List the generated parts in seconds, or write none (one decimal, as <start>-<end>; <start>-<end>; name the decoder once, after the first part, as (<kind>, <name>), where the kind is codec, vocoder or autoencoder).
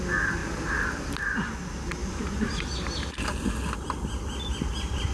0.4-1.1 (vocoder, BigVGAN v2); 2.0-3.6